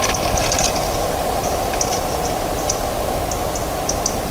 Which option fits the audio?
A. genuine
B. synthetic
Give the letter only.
A